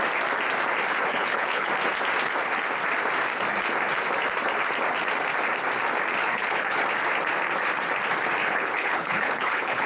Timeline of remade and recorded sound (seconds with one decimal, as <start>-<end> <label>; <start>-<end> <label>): 0.0-1.1 recorded; 1.1-1.7 remade; 1.7-6.2 recorded; 6.2-6.8 remade; 6.8-8.4 recorded; 8.4-9.9 remade